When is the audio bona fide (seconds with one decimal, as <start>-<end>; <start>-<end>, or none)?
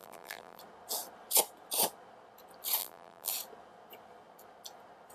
0.6-2.8; 3.3-5.1